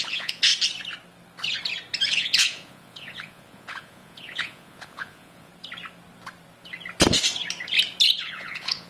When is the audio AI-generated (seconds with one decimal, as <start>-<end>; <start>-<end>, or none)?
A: 0.0-0.5; 2.1-5.5; 8.2-8.9